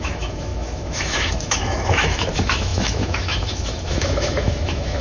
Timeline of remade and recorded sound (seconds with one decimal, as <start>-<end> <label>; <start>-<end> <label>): 0.0-5.0 remade